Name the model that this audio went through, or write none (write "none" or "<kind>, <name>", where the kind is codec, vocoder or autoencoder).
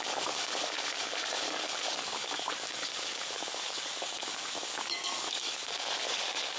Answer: codec, DAC